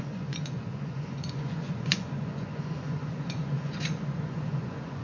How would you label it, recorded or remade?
remade